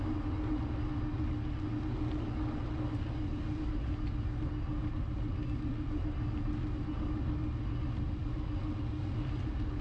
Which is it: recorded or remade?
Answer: recorded